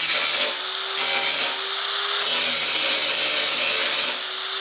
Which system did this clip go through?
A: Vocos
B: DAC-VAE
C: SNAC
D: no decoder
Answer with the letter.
D